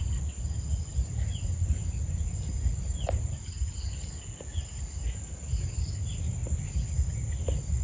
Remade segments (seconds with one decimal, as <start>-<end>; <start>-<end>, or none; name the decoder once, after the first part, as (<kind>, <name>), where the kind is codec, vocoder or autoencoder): none